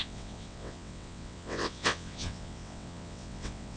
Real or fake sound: fake